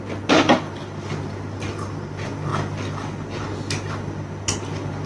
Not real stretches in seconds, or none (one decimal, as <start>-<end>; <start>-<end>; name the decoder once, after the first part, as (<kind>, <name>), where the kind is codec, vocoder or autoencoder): none